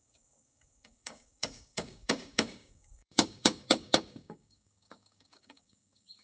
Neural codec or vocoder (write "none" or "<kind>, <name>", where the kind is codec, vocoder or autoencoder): codec, DAC